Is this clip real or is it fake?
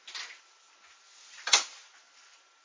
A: real